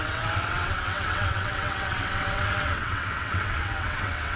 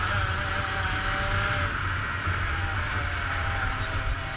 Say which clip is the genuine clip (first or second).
second